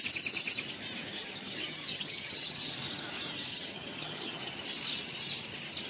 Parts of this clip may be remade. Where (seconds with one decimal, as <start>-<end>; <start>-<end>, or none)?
1.1-2.7; 3.5-4.4